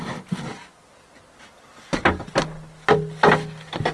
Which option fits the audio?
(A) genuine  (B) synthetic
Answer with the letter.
A